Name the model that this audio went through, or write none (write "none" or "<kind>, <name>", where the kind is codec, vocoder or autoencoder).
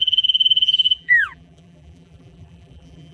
vocoder, BigVGAN v2